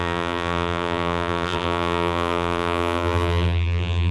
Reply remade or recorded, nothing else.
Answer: remade